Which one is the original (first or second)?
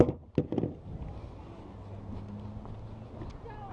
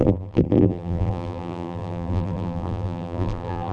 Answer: first